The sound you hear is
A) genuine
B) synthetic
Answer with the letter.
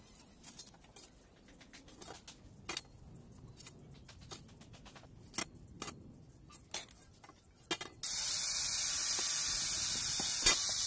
A